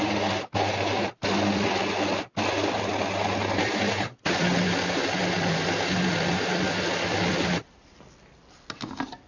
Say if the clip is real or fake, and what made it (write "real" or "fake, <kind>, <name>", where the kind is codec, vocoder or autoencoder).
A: real